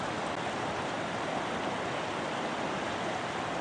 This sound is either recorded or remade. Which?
recorded